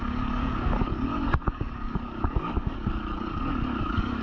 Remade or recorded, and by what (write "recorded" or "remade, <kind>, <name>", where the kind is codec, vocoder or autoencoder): remade, codec, DAC